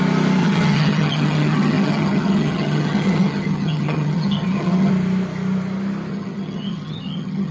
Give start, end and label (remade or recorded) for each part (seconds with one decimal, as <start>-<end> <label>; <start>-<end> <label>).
0.0-0.4 recorded; 0.4-4.9 remade; 4.9-6.1 recorded; 6.1-7.5 remade